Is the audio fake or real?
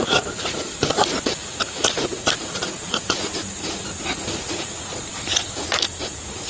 fake